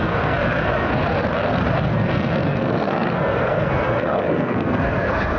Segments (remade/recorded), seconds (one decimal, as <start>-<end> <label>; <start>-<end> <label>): 0.0-0.9 remade; 0.9-1.9 recorded; 1.9-5.4 remade